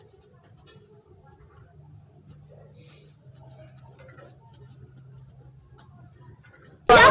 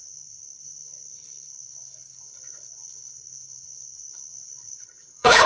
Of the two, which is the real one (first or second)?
first